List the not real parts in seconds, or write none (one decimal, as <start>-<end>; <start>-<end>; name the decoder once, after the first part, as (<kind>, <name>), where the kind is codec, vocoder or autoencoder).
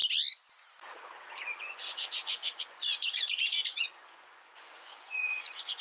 1.6-5.8 (vocoder, Vocos)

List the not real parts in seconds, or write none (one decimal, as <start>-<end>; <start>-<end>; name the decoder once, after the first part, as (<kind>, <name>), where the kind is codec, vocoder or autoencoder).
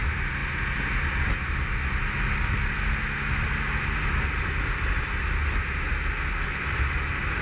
none